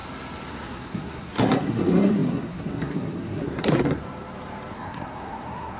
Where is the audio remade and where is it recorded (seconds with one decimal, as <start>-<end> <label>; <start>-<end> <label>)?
0.0-0.5 recorded; 0.5-4.0 remade; 4.0-4.7 recorded; 4.7-5.8 remade